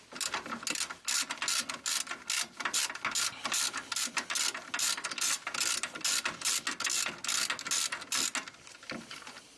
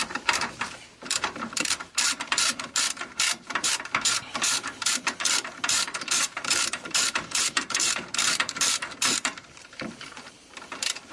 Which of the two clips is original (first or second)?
first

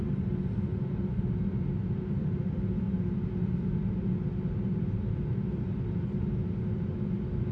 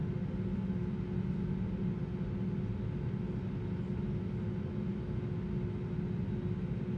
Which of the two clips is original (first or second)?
second